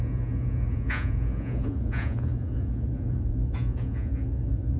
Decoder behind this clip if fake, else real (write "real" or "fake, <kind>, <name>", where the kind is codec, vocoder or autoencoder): fake, vocoder, Vocos